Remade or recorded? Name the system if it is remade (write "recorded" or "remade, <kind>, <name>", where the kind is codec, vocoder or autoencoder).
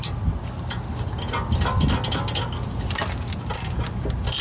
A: recorded